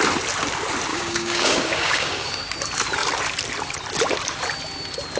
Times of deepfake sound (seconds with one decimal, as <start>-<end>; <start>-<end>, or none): 0.9-2.5